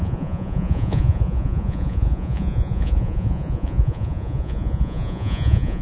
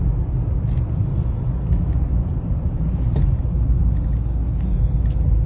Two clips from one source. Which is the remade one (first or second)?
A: first